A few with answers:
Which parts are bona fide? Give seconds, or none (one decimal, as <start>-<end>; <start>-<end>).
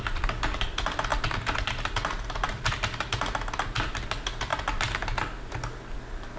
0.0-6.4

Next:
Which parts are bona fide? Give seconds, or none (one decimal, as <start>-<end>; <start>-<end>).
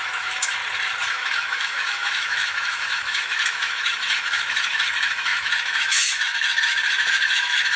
0.6-1.1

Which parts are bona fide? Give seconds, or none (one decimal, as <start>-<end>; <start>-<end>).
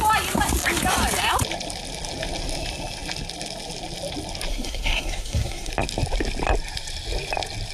0.0-4.5; 5.7-7.7